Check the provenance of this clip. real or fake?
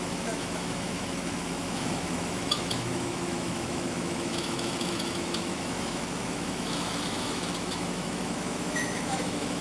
fake